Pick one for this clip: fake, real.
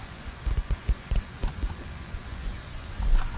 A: fake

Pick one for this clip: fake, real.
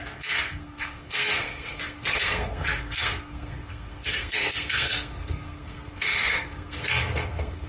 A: fake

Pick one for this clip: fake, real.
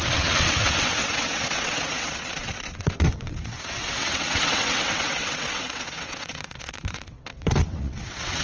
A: fake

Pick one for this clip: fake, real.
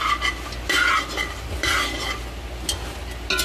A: real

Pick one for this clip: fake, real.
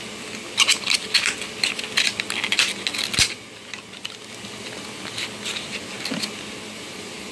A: real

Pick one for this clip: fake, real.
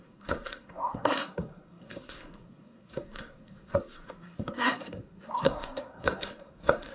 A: fake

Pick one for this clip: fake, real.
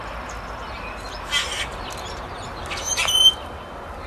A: real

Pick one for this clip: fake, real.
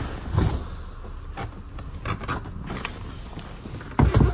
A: real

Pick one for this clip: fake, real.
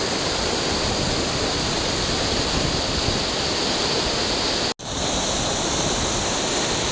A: real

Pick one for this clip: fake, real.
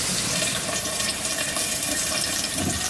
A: fake